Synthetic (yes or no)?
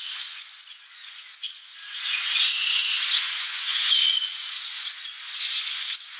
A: yes